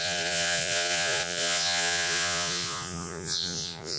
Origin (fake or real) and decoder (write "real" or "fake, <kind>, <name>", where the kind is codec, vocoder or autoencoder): fake, vocoder, Vocos